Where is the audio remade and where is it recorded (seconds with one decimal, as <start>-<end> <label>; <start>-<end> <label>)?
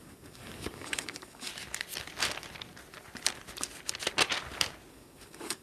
0.0-1.5 remade; 1.5-4.9 recorded; 4.9-5.6 remade